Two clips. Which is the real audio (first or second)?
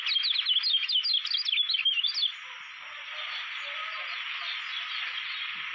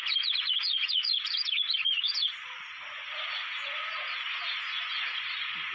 first